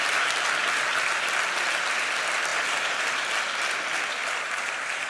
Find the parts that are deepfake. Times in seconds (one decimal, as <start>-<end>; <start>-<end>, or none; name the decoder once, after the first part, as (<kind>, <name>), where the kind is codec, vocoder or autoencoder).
2.5-3.3 (vocoder, BigVGAN v2); 4.2-5.1